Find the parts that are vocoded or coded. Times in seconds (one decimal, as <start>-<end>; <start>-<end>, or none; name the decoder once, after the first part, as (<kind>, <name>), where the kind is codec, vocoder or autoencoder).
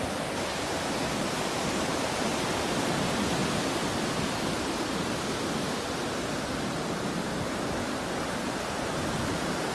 none